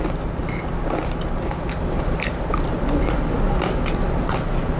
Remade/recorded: recorded